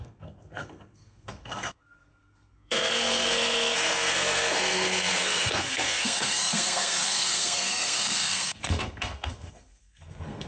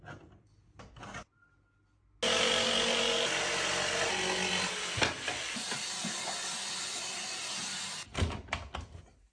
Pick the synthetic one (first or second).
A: first